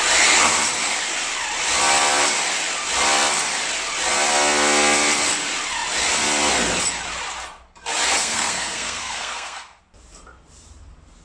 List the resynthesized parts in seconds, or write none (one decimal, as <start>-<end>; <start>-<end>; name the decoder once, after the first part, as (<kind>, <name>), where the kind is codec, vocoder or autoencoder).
8.2-9.8 (codec, SNAC)